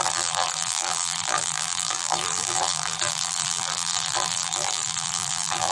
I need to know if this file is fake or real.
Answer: fake